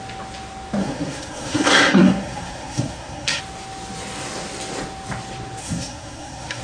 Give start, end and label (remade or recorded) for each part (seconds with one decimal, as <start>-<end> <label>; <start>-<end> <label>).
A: 0.0-0.8 recorded; 0.8-3.4 remade; 3.4-5.6 recorded; 5.6-6.6 remade

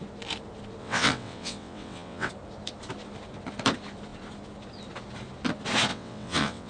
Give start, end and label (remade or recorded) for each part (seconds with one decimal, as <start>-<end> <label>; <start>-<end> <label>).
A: 0.0-0.8 recorded; 0.8-2.3 remade; 2.3-5.9 recorded; 5.9-6.7 remade